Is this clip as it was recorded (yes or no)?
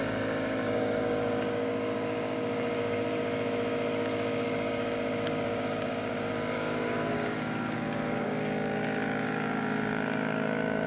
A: no